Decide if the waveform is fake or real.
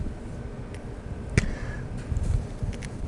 real